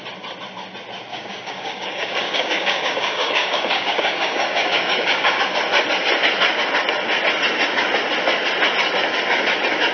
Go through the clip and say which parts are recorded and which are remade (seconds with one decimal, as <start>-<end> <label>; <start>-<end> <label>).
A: 0.0-1.1 recorded; 1.1-5.4 remade; 5.4-9.9 recorded